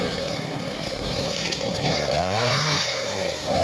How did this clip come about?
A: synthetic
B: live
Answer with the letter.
A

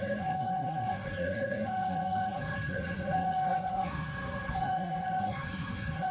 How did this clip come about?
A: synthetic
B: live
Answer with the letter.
A